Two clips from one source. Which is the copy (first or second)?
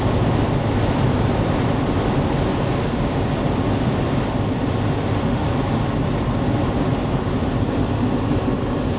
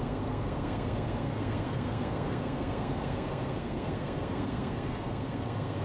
second